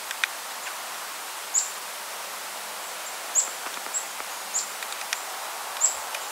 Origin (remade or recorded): recorded